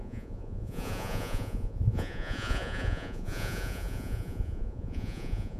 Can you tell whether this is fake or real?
fake